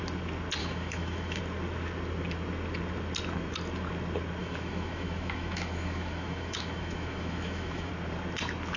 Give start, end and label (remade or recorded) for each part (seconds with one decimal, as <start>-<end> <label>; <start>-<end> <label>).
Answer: 0.0-0.6 recorded; 0.6-1.4 remade; 1.4-4.4 recorded; 4.4-7.9 remade; 7.9-8.8 recorded